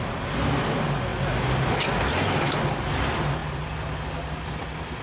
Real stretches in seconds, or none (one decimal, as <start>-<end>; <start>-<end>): 0.0-5.0